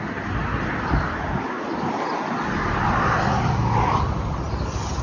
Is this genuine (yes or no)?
yes